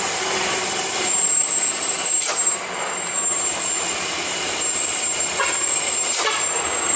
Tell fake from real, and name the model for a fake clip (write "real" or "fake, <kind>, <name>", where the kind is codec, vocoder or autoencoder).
fake, vocoder, BigVGAN v2